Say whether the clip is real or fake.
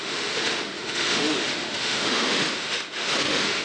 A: fake